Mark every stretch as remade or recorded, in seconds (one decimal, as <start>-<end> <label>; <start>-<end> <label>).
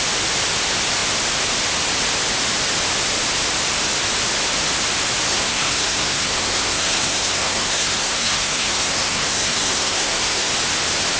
0.0-5.3 recorded; 5.3-10.5 remade; 10.5-11.2 recorded